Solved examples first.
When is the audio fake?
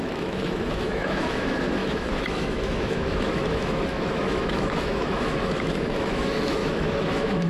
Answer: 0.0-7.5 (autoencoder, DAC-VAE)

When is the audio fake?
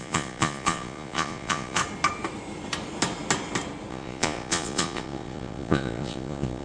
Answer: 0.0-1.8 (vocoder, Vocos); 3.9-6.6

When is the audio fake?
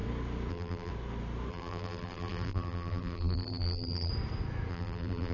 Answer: 0.5-0.9 (vocoder, BigVGAN v2); 1.5-4.1; 4.7-5.3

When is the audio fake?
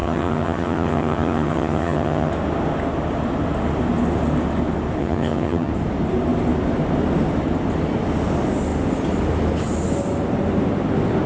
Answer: 0.0-2.3 (vocoder, HiFi-GAN); 5.0-5.7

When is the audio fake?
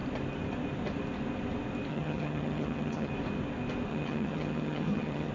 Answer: 1.9-3.1 (vocoder, HiFi-GAN); 3.9-5.3